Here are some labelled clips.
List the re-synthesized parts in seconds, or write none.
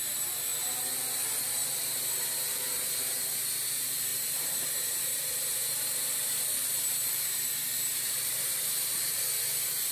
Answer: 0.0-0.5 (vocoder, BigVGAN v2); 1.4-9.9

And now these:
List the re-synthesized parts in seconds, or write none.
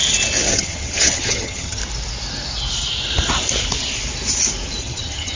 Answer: 0.5-1.8 (vocoder, HiFi-GAN); 4.8-5.3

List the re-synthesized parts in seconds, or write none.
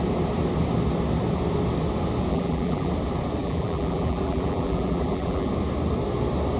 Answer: 2.3-2.9 (vocoder, BigVGAN v2); 3.4-5.5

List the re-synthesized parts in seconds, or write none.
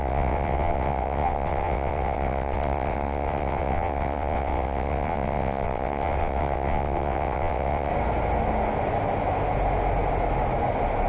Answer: 0.0-7.9 (vocoder, WaveNeXt)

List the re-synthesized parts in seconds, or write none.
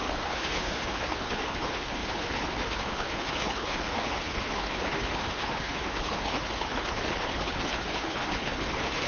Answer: 0.0-9.1 (codec, HILCodec)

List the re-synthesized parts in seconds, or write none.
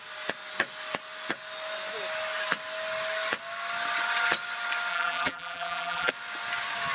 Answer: 4.9-6.1 (vocoder, BigVGAN v2)